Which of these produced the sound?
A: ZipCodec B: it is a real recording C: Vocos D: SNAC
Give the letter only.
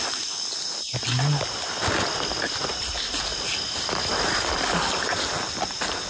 B